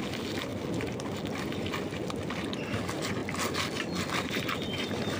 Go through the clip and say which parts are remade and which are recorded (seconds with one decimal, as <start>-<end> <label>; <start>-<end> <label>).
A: 0.0-5.2 recorded